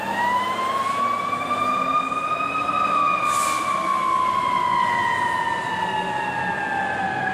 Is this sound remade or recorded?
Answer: recorded